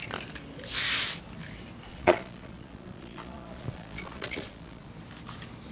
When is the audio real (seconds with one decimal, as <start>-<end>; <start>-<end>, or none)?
0.0-1.9; 4.9-5.7